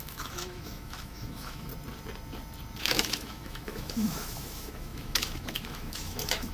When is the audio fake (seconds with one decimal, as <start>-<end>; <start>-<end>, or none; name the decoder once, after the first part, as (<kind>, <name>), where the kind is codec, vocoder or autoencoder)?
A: 0.0-1.7 (autoencoder, DAC-VAE); 2.8-6.5